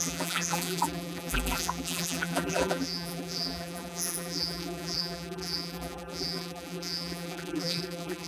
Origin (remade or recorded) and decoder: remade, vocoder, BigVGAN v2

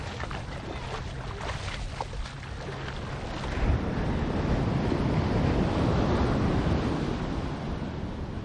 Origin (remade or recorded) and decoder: recorded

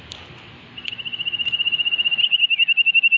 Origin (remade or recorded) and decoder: recorded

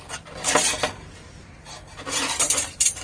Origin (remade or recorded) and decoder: remade, vocoder, BigVGAN v2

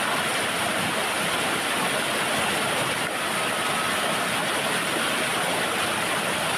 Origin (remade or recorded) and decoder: recorded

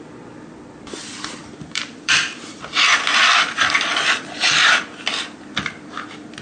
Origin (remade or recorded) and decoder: remade, vocoder, BigVGAN v2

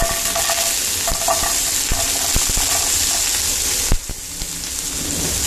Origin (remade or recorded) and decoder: recorded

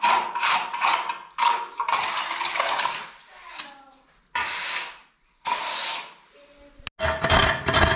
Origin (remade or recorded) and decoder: recorded